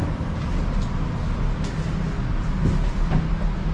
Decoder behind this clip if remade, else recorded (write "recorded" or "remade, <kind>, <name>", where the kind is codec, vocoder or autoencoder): recorded